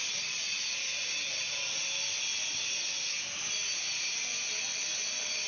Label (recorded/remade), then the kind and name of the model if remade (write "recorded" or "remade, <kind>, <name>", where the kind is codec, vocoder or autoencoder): recorded